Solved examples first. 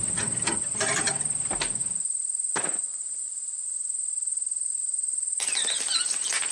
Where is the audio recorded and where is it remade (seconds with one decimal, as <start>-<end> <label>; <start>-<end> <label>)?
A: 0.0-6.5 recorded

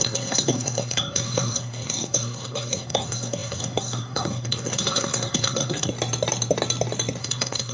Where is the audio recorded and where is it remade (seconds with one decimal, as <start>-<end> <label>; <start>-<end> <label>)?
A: 0.0-5.9 remade; 5.9-7.2 recorded; 7.2-7.7 remade

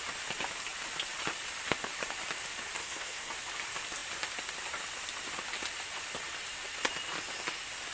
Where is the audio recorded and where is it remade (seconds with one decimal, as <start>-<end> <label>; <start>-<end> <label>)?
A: 0.0-2.8 recorded; 2.8-3.3 remade; 3.3-7.9 recorded

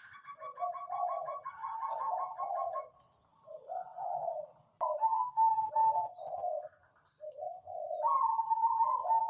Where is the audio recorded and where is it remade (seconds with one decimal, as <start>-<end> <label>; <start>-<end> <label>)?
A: 0.0-5.0 recorded; 5.0-5.5 remade; 5.5-9.3 recorded

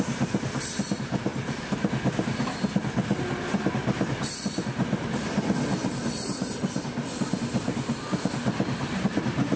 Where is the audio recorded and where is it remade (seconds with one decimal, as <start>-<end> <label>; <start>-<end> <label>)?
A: 0.0-9.6 recorded

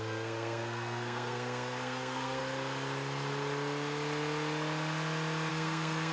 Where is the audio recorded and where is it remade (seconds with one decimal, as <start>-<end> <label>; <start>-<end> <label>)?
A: 0.0-2.4 remade; 2.4-5.5 recorded; 5.5-6.1 remade

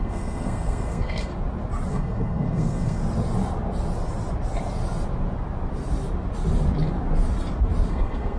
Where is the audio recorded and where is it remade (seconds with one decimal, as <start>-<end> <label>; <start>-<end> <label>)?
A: 0.0-1.3 remade; 1.3-1.9 recorded; 1.9-3.0 remade; 3.0-7.9 recorded; 7.9-8.4 remade

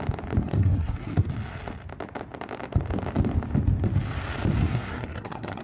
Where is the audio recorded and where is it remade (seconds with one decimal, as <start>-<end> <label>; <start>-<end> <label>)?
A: 0.0-0.4 recorded; 0.4-1.3 remade; 1.3-4.6 recorded; 4.6-5.6 remade